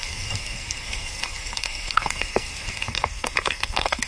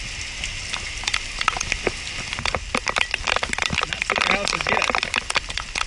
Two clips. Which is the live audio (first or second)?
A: second